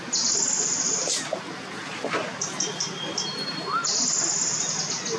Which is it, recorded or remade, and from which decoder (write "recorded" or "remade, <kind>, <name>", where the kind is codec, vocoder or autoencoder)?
recorded